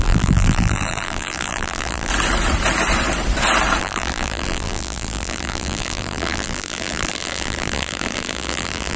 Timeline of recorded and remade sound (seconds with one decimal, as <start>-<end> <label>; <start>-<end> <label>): 0.0-2.1 remade; 2.1-3.8 recorded; 3.8-9.0 remade